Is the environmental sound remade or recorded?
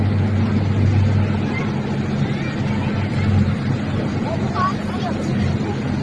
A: recorded